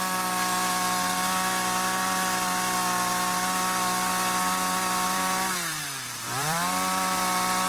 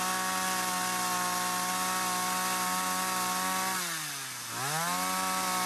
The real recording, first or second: second